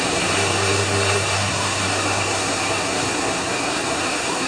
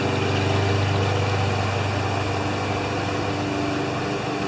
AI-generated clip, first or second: first